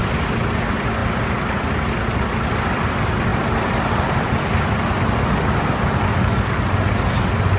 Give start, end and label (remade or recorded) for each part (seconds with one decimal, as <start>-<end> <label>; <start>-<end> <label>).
0.0-6.1 recorded; 6.1-6.6 remade; 6.6-7.6 recorded